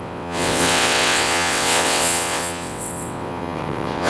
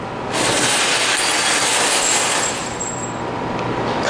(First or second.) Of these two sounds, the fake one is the first